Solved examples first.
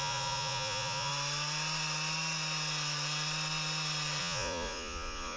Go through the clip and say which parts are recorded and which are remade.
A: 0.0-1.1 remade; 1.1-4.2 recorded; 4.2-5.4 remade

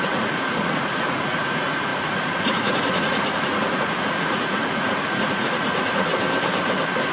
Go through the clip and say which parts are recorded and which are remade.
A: 0.0-6.1 remade; 6.1-7.1 recorded

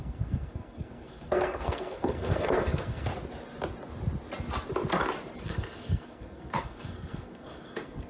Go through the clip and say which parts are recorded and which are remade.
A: 0.0-3.1 remade; 3.1-5.4 recorded; 5.4-8.1 remade

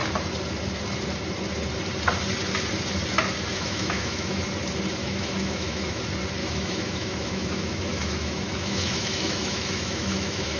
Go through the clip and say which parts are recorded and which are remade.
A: 0.0-3.5 recorded; 3.5-4.4 remade; 4.4-5.0 recorded; 5.0-6.0 remade; 6.0-6.4 recorded; 6.4-10.6 remade

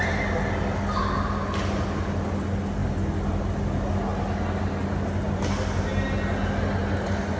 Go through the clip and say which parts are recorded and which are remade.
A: 0.0-7.4 recorded

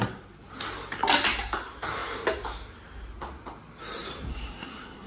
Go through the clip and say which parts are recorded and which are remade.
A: 0.0-4.3 recorded; 4.3-5.1 remade

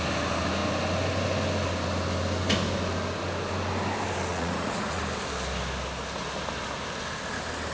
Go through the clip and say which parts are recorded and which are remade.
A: 0.0-4.3 recorded; 4.3-5.0 remade; 5.0-7.7 recorded